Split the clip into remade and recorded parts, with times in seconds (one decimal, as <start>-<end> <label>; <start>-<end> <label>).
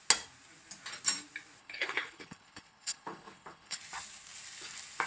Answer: 0.0-1.6 recorded; 1.6-3.8 remade; 3.8-5.1 recorded